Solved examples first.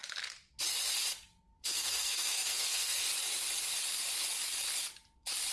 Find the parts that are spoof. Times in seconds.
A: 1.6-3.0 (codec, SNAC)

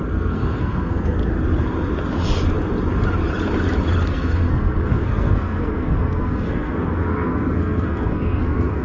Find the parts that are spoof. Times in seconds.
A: 0.0-1.2 (codec, SNAC); 4.1-8.8

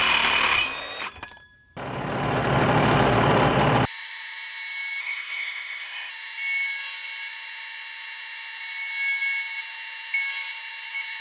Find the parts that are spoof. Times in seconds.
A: 5.0-6.1 (codec, SNAC)